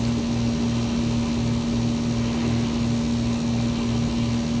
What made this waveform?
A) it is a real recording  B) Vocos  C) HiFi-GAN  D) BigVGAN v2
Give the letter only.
A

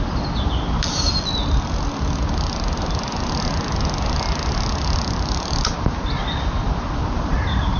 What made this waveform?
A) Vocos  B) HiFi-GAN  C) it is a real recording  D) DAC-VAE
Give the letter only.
C